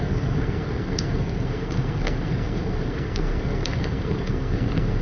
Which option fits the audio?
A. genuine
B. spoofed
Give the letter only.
B